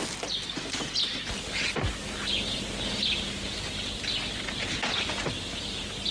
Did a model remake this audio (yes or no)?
no